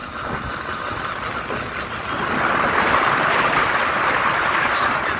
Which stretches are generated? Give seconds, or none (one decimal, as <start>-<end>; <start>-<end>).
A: none